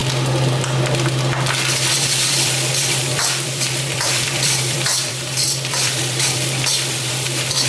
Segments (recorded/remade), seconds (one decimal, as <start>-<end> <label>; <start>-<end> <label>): 0.0-1.9 recorded; 1.9-7.7 remade